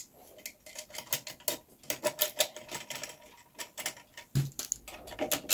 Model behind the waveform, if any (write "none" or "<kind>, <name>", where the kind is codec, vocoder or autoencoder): none